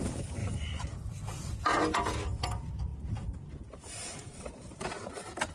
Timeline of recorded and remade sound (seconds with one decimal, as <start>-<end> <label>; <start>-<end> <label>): 0.0-0.4 recorded; 0.4-1.6 remade; 1.6-5.5 recorded